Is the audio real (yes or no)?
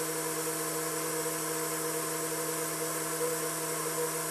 yes